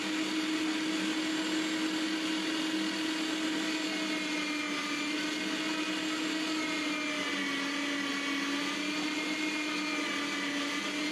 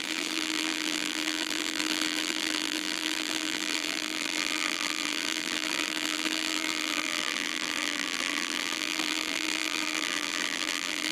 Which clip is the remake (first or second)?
second